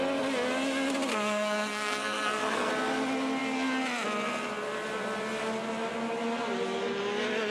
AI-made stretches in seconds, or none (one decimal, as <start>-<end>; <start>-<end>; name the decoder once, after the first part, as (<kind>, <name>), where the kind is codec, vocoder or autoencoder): 1.1-2.7 (codec, SNAC)